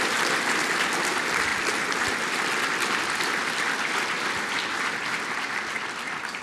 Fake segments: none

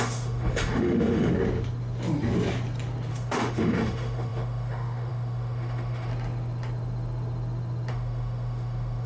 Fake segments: 0.0-1.3 (autoencoder, DAC-VAE); 3.1-6.1; 7.9-9.1

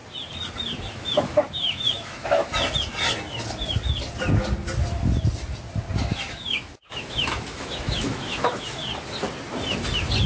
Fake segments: 0.9-2.5 (autoencoder, DAC-VAE); 6.0-8.8

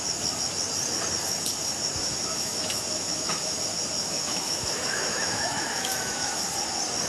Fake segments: 2.0-3.6 (autoencoder, DAC-VAE); 4.0-6.4

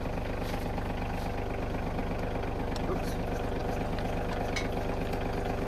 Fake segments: none

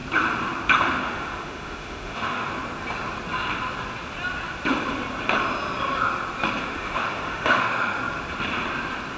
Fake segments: 0.9-2.5 (autoencoder, DAC-VAE); 6.6-8.0

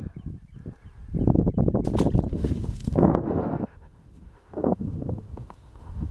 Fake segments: 2.3-6.1 (autoencoder, DAC-VAE)

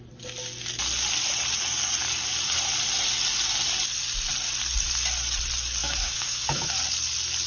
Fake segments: 5.8-6.7 (autoencoder, DAC-VAE)